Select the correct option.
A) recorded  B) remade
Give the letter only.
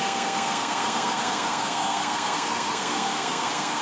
B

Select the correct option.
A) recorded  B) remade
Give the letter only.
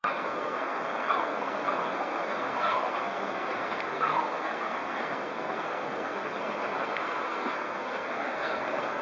B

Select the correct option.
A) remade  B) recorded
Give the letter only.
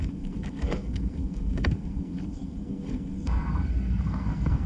A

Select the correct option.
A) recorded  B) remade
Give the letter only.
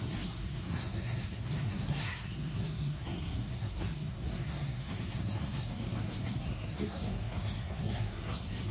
B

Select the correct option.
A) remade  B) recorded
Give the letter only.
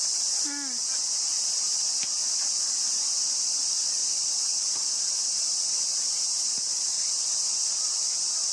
B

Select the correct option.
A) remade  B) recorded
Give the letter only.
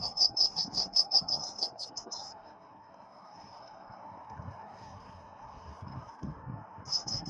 A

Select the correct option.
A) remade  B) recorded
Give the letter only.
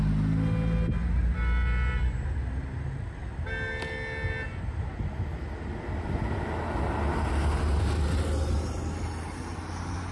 B